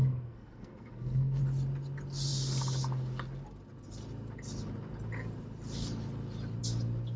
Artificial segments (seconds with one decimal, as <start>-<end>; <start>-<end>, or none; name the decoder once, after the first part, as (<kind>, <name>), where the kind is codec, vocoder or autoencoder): 0.0-1.4 (codec, SNAC)